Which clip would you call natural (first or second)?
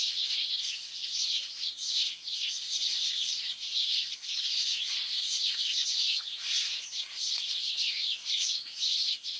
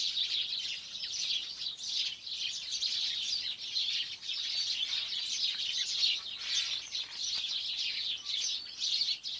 second